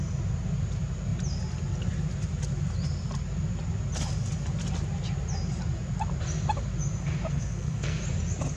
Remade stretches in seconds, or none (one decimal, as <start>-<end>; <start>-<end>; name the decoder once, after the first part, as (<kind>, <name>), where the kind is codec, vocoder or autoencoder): 7.3-8.0 (codec, SNAC)